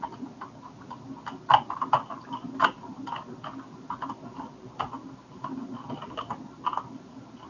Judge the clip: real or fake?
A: real